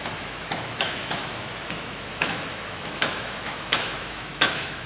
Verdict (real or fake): fake